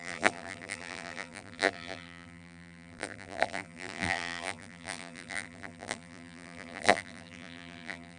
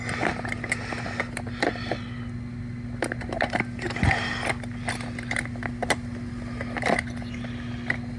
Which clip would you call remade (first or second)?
first